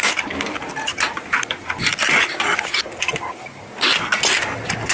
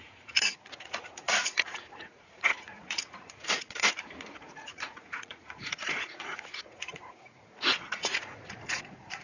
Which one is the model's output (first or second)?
second